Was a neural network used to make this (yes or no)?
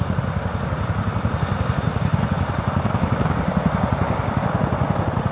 no